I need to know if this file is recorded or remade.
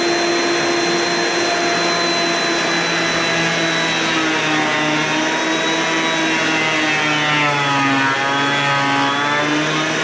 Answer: recorded